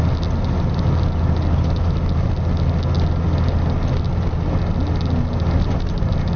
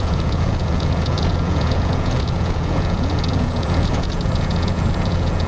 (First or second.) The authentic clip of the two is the first